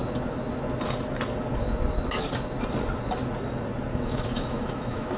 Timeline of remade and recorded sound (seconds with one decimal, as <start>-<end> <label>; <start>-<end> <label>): 0.0-3.9 recorded; 3.9-5.2 remade